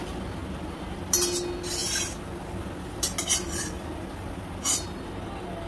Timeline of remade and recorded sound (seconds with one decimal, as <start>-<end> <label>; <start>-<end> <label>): 0.0-5.7 recorded